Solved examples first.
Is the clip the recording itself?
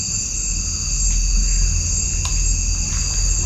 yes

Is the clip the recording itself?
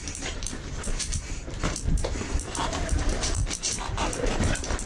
no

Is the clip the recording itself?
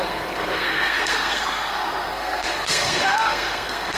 no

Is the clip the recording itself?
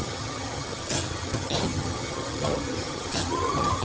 no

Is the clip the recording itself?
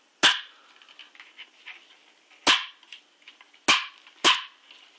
yes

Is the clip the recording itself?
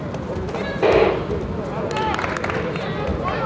yes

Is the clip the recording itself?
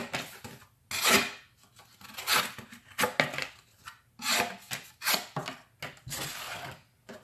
yes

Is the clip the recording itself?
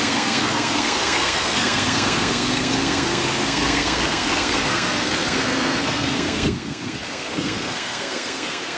no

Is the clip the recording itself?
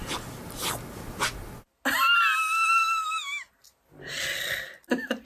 yes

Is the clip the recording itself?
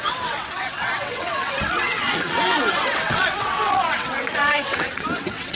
no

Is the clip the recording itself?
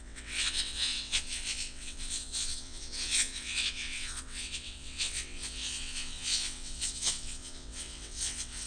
no